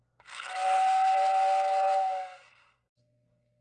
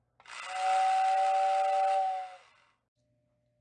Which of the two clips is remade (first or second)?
first